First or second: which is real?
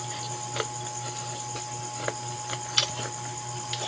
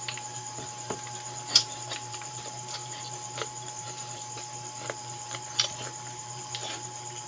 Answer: first